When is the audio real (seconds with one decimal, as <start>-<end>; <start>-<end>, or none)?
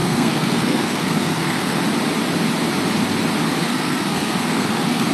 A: 1.8-3.6